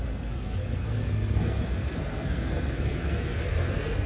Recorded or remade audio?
remade